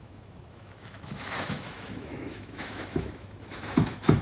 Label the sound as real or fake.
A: fake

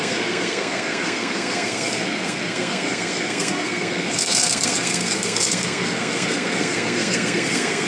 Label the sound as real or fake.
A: fake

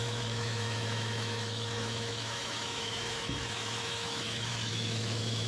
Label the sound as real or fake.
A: fake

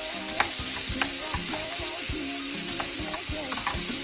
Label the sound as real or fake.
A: fake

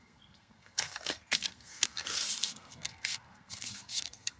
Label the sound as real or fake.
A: fake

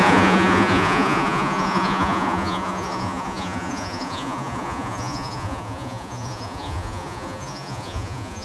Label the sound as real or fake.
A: fake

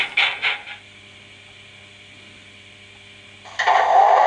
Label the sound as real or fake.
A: real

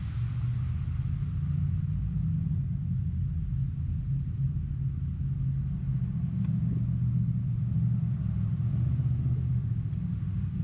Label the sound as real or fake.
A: real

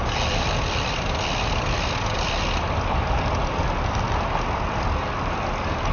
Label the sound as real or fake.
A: real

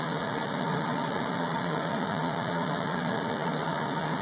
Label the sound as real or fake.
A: fake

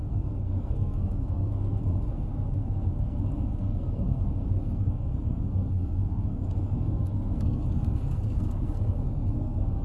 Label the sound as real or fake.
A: fake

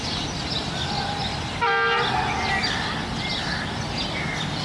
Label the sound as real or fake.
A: real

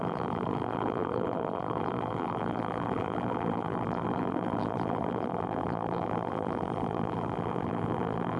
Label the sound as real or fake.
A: fake